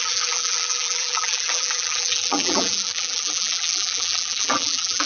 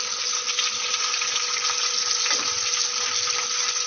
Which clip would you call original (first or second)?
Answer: second